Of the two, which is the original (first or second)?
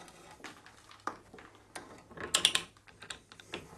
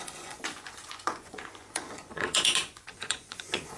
first